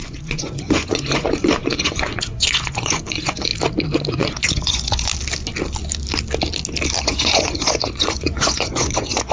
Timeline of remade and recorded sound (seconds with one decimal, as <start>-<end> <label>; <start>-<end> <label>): 0.0-3.5 remade; 3.5-4.1 recorded; 4.1-5.1 remade; 5.1-7.0 recorded; 7.0-9.3 remade